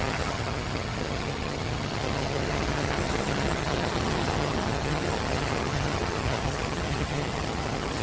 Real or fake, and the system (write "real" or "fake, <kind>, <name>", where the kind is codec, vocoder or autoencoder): fake, vocoder, HiFi-GAN